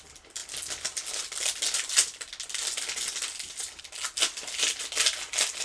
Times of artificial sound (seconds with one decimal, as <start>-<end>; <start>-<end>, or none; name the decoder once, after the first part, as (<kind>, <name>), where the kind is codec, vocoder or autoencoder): none